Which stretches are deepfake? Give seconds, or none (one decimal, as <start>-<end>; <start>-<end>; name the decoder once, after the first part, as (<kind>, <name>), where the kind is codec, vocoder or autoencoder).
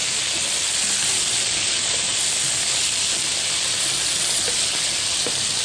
none